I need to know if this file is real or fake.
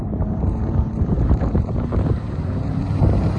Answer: fake